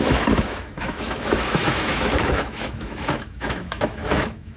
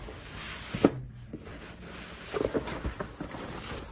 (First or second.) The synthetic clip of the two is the first